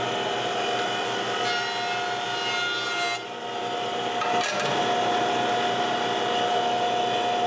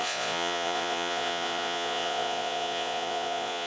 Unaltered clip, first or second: first